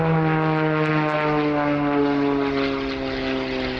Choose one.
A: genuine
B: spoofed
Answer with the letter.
A